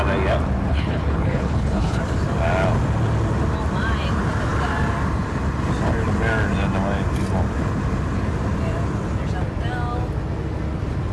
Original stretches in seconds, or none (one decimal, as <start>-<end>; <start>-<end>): 0.0-0.7; 2.0-11.1

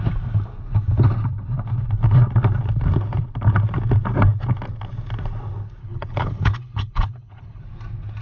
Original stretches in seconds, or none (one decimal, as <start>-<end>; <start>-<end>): 0.0-5.8; 7.6-8.2